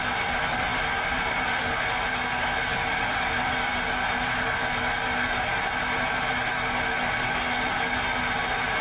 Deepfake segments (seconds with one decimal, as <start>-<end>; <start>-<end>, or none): none

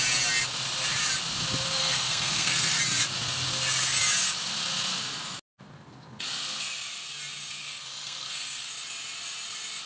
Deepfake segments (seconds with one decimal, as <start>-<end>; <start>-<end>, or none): 1.8-2.8; 7.6-8.7

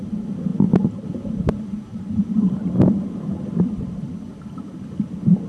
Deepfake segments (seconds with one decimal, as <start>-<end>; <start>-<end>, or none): 1.9-5.5

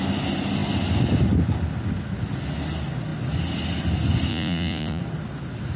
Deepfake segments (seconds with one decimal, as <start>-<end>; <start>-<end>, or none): 4.3-5.0

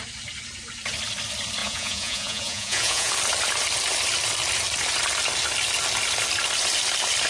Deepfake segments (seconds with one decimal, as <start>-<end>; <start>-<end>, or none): 1.6-3.1

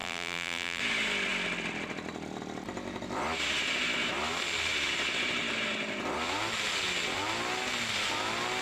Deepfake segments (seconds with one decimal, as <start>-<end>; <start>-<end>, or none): 0.0-0.8